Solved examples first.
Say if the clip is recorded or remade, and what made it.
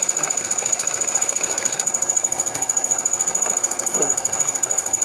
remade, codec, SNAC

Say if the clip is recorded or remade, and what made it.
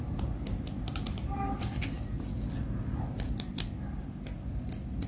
recorded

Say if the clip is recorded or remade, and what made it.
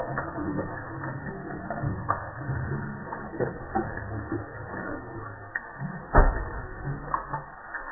remade, codec, SNAC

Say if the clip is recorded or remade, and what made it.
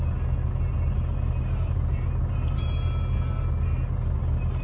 recorded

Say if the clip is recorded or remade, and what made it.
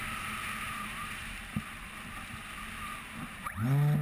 recorded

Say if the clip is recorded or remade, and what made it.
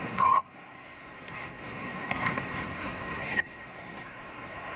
remade, codec, SNAC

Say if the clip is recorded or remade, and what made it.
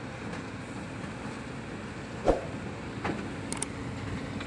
recorded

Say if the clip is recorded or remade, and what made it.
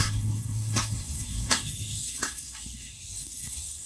remade, codec, SNAC